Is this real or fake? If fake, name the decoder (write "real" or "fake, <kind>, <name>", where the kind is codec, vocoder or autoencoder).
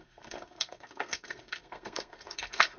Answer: fake, codec, SNAC